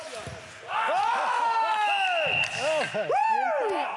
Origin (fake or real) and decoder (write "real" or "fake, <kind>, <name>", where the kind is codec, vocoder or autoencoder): real